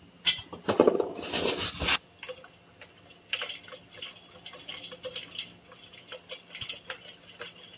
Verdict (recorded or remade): recorded